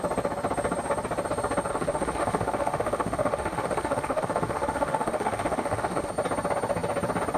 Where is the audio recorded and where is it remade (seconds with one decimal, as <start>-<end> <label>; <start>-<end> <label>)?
0.0-1.7 recorded; 1.7-6.1 remade; 6.1-7.4 recorded